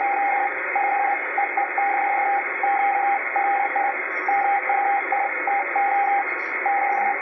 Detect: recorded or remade recorded